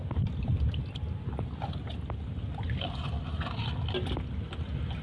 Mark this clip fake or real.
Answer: real